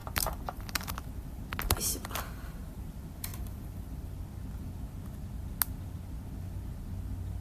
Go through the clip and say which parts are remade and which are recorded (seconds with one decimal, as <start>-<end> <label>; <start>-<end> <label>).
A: 0.0-1.4 remade; 1.4-3.3 recorded; 3.3-4.1 remade; 4.1-7.4 recorded